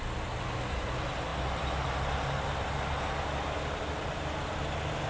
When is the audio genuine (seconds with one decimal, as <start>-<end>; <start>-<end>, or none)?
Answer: 0.0-5.1